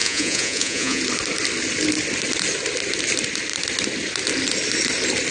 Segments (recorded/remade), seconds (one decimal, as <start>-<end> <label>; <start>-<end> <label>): 0.0-1.0 remade; 1.0-5.3 recorded